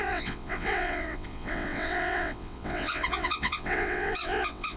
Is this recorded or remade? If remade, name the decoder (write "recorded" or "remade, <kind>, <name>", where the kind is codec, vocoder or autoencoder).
remade, vocoder, WaveNeXt